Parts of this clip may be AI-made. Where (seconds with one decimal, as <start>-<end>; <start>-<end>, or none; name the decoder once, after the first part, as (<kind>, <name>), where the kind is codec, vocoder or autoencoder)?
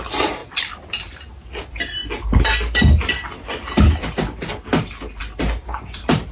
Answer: 0.0-0.4 (vocoder, BigVGAN v2); 1.3-2.0; 5.2-6.3